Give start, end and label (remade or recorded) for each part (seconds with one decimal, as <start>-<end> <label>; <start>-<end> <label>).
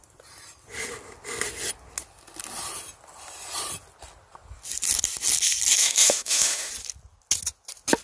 0.0-5.8 recorded; 5.8-6.7 remade; 6.7-8.0 recorded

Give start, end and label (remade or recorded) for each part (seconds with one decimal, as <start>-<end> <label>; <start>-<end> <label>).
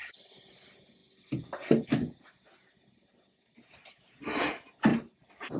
0.0-4.9 recorded; 4.9-5.6 remade